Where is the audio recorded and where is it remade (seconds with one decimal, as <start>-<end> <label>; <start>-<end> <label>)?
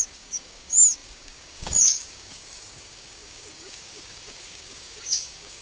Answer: 0.0-5.6 remade